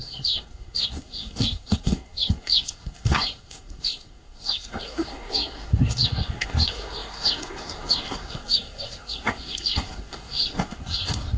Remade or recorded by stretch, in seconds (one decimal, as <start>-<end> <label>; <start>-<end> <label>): 0.0-11.4 remade